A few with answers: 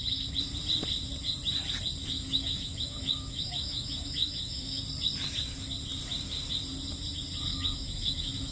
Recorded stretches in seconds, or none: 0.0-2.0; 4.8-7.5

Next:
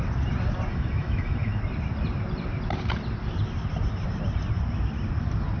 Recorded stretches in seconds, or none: 0.0-0.7; 1.6-5.6

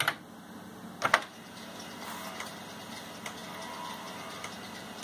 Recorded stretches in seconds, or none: 0.0-5.0

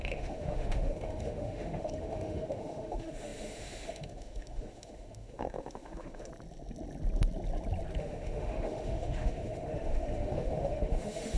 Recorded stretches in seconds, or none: 6.3-8.0

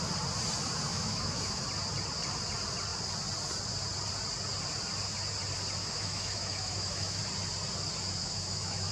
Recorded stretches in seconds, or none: 0.0-0.9; 1.6-5.8; 7.2-8.2

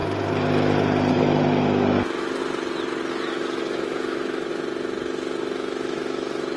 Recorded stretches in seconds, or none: 0.0-1.1; 2.4-3.1; 4.5-5.4

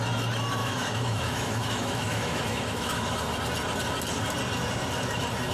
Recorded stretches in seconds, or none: 0.0-0.6; 3.2-5.5

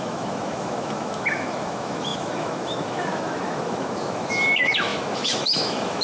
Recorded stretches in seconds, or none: none